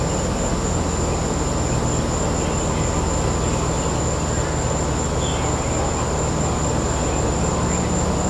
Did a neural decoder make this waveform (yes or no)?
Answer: no